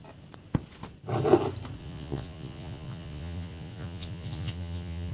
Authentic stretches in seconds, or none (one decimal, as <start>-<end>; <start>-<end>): 0.0-1.8